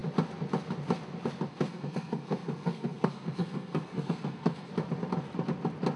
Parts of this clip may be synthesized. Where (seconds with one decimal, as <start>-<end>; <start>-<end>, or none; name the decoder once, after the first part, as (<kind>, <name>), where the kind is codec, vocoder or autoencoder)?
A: 1.5-4.7 (codec, SNAC)